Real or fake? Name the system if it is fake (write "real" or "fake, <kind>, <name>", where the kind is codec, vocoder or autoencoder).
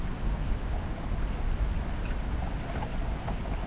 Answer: real